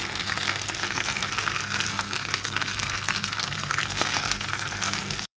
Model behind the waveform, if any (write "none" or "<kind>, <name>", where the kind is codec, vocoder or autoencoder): codec, SNAC